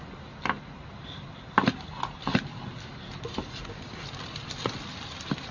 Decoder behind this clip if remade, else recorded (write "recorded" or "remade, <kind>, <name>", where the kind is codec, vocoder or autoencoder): recorded